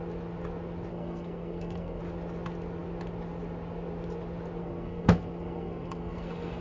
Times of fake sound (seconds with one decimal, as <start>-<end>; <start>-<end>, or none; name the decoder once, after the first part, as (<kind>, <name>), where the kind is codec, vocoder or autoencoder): 0.9-2.0 (codec, SNAC); 4.6-6.6